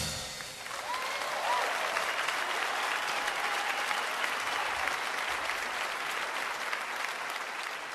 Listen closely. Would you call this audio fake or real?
real